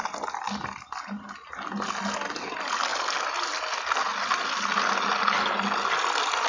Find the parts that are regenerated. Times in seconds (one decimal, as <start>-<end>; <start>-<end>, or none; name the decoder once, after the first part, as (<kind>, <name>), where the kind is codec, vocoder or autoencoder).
none